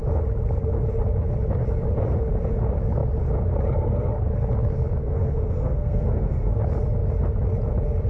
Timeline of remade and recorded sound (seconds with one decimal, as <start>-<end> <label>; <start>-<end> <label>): 0.0-5.0 recorded; 5.0-6.6 remade; 6.6-8.1 recorded